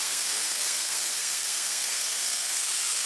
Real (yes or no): no